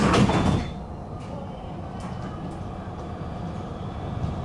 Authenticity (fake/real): real